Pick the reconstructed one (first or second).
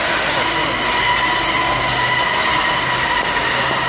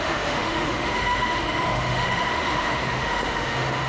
second